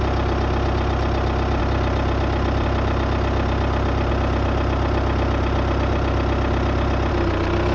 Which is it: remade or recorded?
recorded